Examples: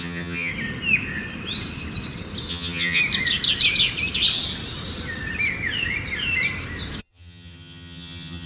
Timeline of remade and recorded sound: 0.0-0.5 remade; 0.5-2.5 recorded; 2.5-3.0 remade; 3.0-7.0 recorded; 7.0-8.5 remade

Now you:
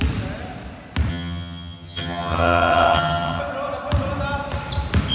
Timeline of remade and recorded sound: 0.0-1.1 recorded; 1.1-3.4 remade; 3.4-5.1 recorded

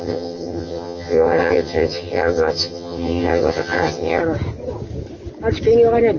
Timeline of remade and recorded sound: 0.0-4.2 remade; 4.2-6.2 recorded

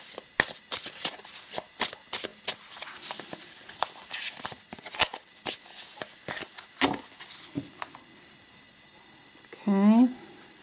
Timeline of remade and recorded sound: 0.0-10.6 recorded

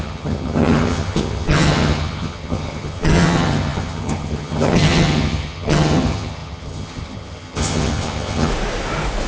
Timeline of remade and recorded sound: 0.0-8.5 remade; 8.5-9.3 recorded